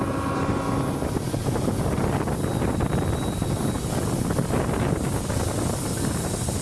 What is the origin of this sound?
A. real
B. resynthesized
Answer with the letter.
A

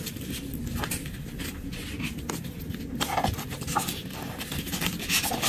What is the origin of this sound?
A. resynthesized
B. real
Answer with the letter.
B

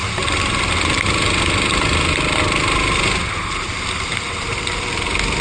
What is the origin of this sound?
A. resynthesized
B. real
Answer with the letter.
B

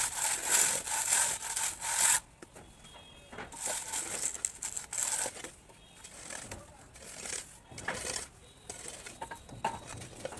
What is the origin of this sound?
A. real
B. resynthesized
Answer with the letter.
A